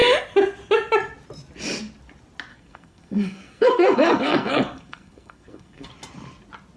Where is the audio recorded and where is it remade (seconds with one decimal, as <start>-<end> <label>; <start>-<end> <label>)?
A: 0.0-2.5 recorded; 2.5-5.9 remade; 5.9-6.8 recorded